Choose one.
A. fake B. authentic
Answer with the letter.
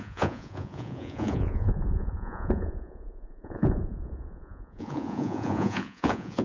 A